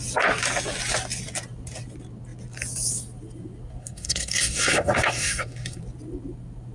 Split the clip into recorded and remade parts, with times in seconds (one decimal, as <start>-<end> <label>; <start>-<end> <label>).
0.0-3.8 recorded; 3.8-5.8 remade; 5.8-6.7 recorded